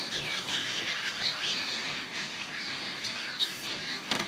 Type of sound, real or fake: fake